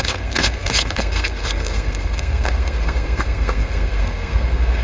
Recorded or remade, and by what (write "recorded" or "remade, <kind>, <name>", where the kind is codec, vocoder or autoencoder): remade, codec, SNAC